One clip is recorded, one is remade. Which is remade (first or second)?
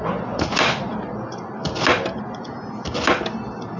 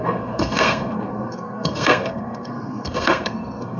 second